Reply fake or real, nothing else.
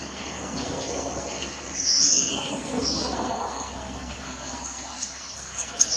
fake